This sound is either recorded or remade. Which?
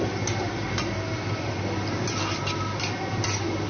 recorded